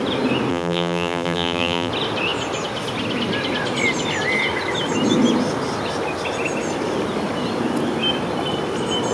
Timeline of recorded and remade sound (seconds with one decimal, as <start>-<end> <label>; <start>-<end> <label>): 0.0-0.5 recorded; 0.5-1.9 remade; 1.9-9.1 recorded